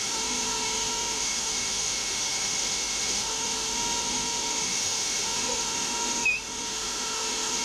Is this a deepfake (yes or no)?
yes